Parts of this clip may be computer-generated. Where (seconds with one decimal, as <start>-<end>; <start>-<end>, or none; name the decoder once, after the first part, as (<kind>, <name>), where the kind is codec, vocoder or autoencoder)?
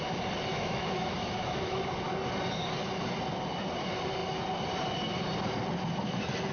0.5-1.8 (autoencoder, DAC-VAE)